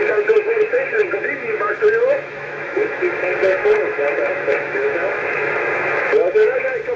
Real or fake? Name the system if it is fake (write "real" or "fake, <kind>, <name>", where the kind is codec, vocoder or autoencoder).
fake, autoencoder, DAC-VAE